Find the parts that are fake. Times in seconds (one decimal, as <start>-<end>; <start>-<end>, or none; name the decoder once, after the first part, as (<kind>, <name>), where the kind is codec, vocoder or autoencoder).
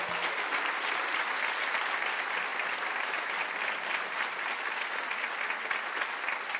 2.5-4.3 (vocoder, BigVGAN v2)